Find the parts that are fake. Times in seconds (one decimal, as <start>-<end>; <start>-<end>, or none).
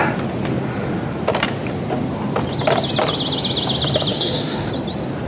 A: 4.1-4.7